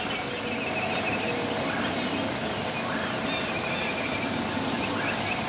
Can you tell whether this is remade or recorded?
recorded